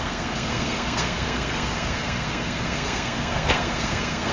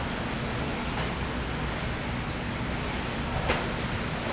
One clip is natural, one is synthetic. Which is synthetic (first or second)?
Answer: first